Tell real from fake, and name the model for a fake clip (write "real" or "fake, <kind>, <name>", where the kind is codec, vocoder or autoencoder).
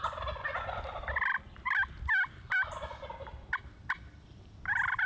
real